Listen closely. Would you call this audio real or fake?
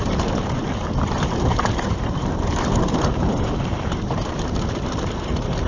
fake